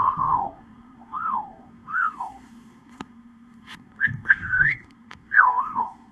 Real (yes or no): no